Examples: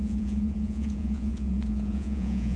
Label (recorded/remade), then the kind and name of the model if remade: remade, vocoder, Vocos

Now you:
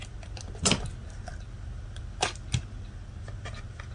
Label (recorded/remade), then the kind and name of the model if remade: recorded